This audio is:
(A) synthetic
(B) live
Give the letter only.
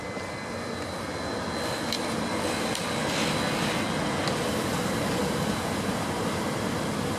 B